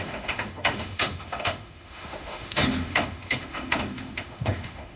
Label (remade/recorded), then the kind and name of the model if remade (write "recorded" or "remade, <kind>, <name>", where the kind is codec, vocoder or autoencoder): remade, autoencoder, DAC-VAE